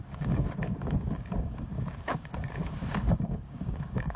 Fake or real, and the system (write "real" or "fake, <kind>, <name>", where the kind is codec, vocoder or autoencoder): fake, codec, DAC